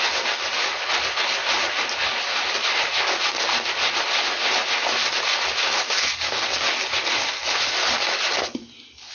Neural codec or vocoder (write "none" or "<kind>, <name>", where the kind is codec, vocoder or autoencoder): none